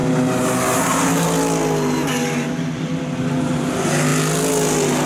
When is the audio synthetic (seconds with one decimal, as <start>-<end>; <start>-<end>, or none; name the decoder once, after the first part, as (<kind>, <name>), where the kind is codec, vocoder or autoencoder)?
none